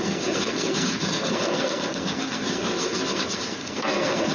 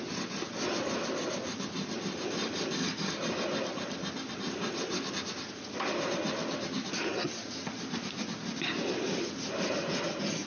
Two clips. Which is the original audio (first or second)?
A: second